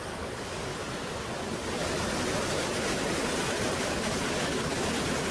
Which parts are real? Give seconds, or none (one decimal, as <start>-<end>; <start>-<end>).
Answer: 0.7-3.9; 4.7-5.3